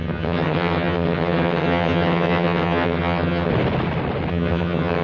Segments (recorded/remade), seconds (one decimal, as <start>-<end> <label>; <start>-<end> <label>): 0.0-3.5 remade; 3.5-4.3 recorded; 4.3-5.0 remade